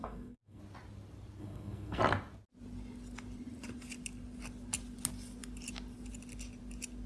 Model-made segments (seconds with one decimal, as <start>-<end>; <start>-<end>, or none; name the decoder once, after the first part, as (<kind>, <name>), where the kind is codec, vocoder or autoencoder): 0.0-0.6 (codec, SNAC); 1.4-2.0